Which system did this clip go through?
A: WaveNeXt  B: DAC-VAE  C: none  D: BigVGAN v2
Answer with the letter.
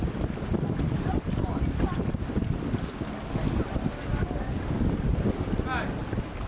C